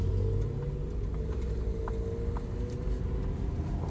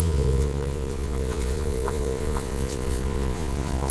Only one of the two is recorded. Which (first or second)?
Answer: first